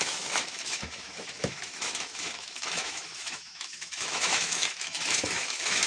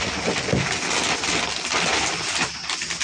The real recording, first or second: second